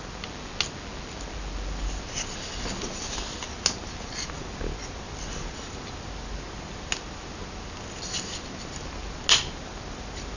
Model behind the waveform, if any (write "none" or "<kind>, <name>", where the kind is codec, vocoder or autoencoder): none